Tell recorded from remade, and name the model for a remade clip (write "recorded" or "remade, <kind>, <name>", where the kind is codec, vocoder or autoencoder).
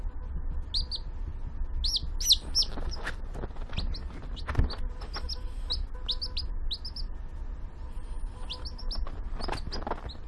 recorded